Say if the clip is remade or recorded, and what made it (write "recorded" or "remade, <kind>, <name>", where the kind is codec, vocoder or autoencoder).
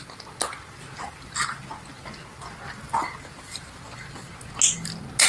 recorded